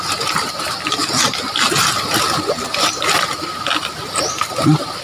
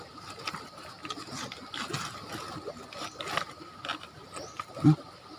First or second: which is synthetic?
first